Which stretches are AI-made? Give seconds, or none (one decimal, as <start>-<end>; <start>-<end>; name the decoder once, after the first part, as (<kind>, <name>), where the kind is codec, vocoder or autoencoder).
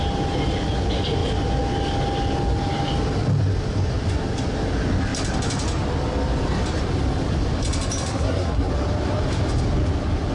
8.1-8.7 (codec, SNAC)